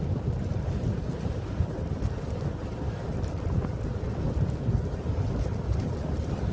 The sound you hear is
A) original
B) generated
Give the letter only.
A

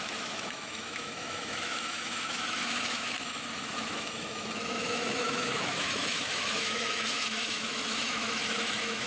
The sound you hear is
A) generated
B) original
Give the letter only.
A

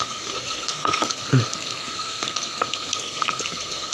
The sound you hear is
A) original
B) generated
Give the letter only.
B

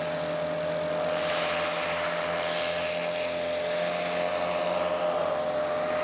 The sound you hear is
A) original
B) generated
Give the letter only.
A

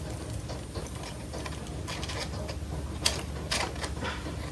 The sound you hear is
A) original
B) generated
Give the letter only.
A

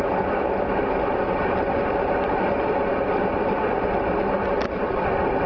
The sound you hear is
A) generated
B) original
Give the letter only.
B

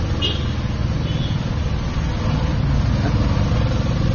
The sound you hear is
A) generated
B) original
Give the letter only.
B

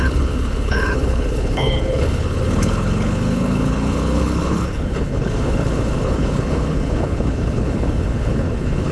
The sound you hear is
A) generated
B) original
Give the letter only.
A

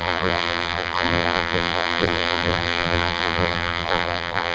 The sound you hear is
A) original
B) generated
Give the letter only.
B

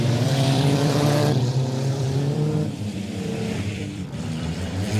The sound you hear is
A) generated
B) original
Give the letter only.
A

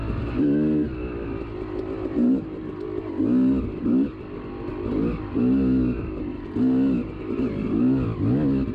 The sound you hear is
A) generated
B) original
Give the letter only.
B